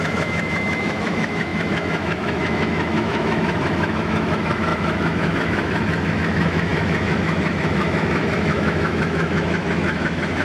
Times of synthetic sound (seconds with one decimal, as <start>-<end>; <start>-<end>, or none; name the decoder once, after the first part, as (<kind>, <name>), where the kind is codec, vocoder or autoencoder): 0.0-10.4 (autoencoder, DAC-VAE)